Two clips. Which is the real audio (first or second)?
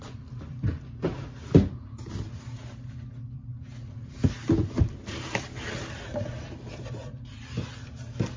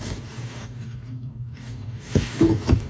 first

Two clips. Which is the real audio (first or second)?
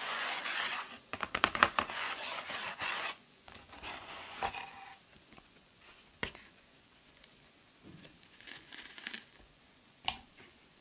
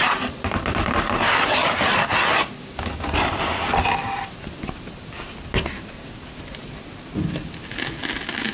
second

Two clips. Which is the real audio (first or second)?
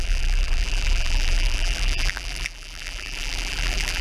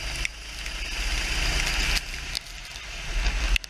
second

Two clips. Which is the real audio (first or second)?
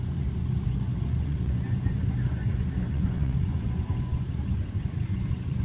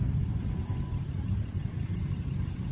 second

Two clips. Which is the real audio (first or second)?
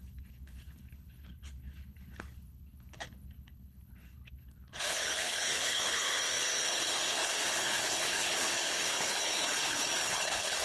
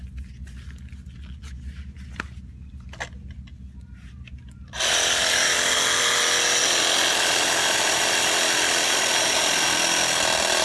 second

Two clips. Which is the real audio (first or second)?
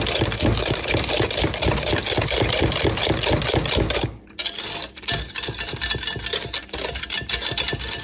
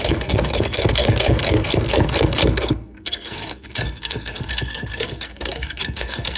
first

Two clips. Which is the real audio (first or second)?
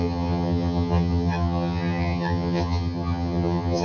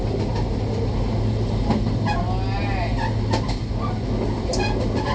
second